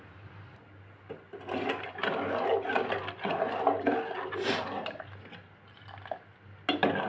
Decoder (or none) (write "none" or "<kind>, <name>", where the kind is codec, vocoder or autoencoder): none